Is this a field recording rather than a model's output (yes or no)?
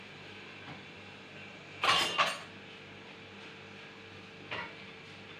yes